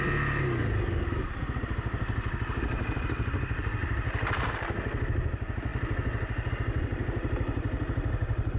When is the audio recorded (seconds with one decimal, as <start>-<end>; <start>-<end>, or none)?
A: 0.0-8.6